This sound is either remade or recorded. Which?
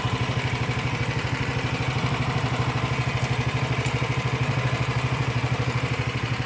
remade